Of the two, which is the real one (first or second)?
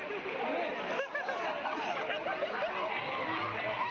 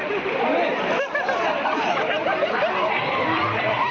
first